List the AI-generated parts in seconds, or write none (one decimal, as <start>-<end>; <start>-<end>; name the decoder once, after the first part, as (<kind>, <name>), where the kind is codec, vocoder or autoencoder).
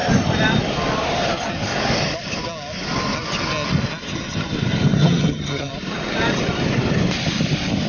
5.0-5.7 (vocoder, HiFi-GAN)